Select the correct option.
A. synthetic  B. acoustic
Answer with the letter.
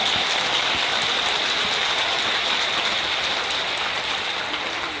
B